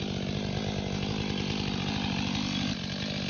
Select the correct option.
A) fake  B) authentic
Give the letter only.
B